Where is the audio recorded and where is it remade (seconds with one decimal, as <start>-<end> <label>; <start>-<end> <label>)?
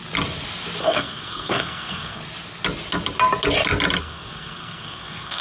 0.0-0.8 recorded; 0.8-2.2 remade; 2.2-4.0 recorded; 4.0-5.4 remade